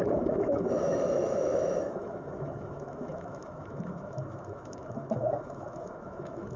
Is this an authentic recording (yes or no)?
no